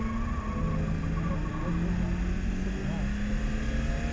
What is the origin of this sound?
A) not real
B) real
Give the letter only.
B